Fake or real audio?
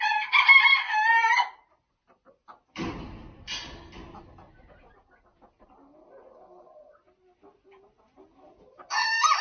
real